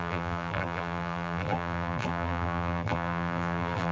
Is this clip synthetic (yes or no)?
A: yes